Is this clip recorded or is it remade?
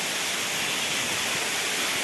recorded